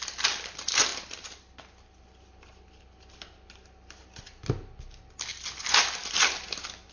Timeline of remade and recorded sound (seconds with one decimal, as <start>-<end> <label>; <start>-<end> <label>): 0.0-6.9 recorded